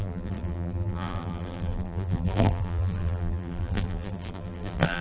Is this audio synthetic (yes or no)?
yes